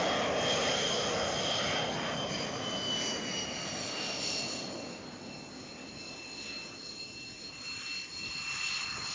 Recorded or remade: recorded